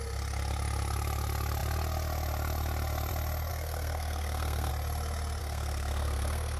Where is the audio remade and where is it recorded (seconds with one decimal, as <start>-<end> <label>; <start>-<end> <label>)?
0.0-3.5 recorded; 3.5-4.7 remade; 4.7-5.4 recorded; 5.4-6.6 remade